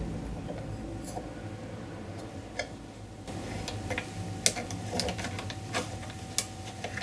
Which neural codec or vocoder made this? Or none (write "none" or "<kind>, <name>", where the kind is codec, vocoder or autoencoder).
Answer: none